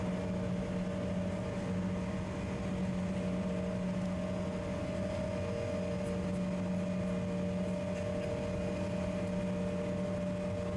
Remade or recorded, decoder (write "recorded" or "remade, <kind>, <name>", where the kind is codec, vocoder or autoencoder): recorded